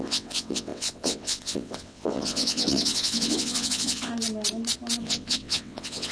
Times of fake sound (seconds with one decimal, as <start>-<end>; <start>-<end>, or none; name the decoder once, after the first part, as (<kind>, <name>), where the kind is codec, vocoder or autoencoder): 0.0-4.1 (vocoder, WaveNeXt); 5.0-6.1